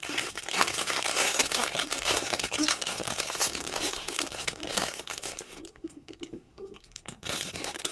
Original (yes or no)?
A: no